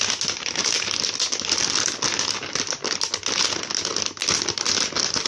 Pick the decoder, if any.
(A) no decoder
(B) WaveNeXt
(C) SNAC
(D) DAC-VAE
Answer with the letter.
A